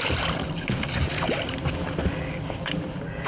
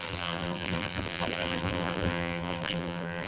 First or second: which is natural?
first